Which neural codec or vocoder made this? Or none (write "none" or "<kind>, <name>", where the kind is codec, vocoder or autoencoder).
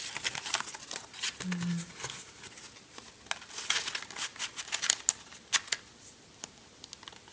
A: none